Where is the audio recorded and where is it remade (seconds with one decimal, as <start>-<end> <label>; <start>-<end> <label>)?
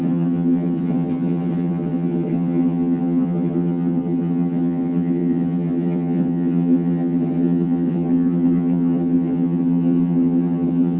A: 0.0-11.0 remade